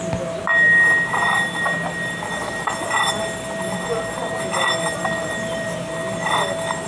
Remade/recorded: recorded